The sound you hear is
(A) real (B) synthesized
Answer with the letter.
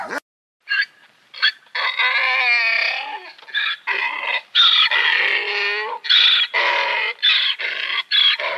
A